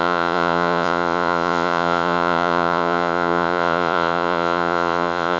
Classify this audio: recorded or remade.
remade